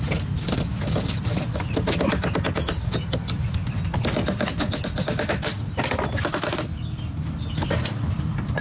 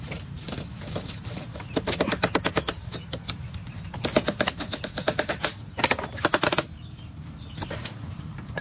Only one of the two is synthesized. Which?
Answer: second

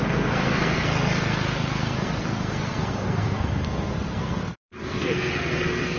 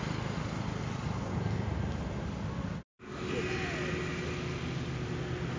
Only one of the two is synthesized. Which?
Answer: first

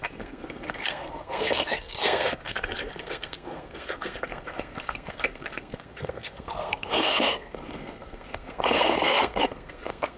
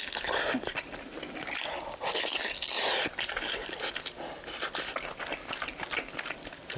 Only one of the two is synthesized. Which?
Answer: first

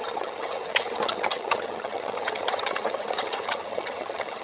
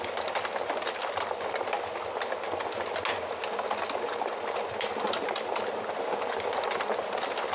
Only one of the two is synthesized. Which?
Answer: first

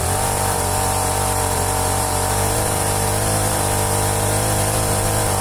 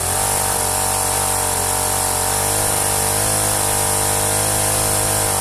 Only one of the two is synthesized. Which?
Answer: first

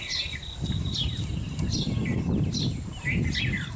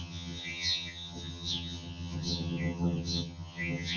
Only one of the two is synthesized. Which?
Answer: second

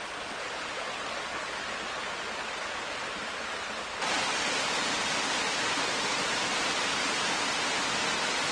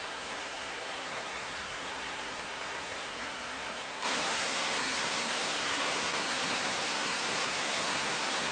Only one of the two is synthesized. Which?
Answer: second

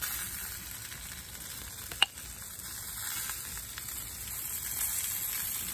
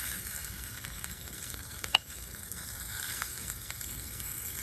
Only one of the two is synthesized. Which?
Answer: second